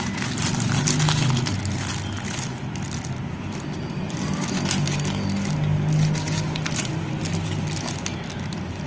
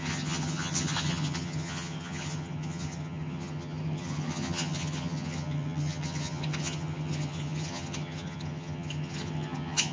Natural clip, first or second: first